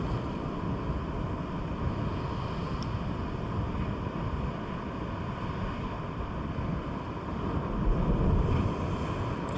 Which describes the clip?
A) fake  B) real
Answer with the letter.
B